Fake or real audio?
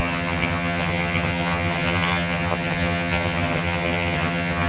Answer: fake